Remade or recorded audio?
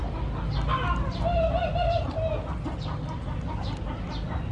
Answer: recorded